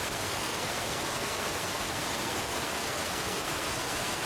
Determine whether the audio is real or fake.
fake